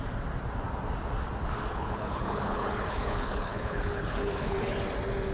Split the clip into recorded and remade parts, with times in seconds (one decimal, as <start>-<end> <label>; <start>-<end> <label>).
0.0-1.7 recorded; 1.7-4.8 remade; 4.8-5.3 recorded